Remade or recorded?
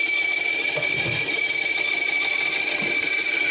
recorded